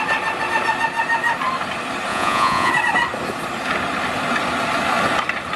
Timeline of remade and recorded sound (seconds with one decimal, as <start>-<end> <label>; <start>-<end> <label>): 0.0-2.1 recorded; 2.1-2.7 remade; 2.7-5.6 recorded